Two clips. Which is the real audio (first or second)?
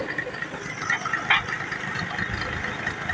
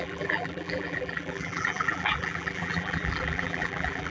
first